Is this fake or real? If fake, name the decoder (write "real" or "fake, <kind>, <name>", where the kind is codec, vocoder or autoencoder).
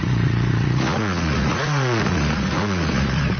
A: fake, vocoder, Vocos